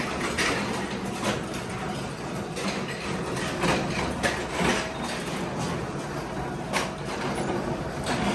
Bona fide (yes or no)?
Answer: yes